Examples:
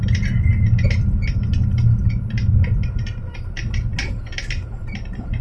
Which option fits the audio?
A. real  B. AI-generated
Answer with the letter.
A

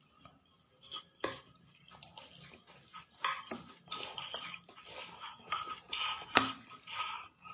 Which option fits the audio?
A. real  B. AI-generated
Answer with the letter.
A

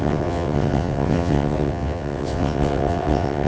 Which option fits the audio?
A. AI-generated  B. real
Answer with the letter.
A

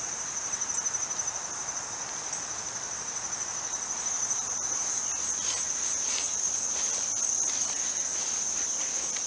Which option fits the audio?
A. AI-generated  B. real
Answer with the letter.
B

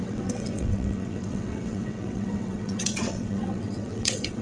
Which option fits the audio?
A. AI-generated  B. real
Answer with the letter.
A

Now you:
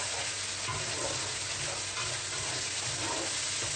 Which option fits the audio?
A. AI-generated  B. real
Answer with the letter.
B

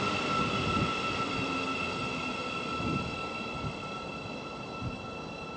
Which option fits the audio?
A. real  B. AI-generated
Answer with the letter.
A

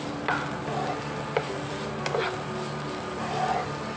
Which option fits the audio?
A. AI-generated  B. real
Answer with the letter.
B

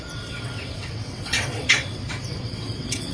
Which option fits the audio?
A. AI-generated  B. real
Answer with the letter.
A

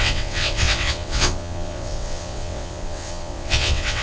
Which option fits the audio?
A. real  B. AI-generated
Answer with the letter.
B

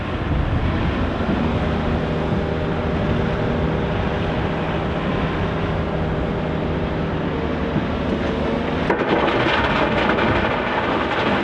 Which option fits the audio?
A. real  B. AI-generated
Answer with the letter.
A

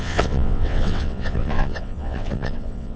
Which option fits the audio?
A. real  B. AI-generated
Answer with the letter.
B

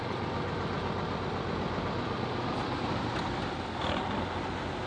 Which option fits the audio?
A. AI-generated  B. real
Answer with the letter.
B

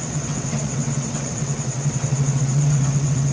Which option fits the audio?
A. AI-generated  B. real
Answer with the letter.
A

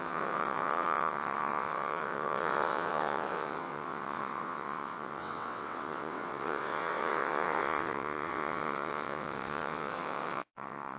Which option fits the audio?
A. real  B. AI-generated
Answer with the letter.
B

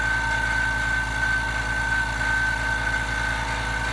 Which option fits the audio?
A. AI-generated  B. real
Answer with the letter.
B